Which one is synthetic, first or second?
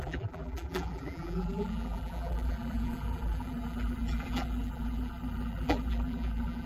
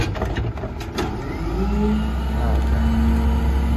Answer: first